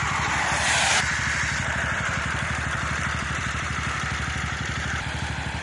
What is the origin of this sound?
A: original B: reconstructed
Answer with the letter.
B